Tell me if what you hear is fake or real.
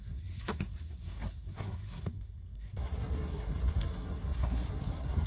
fake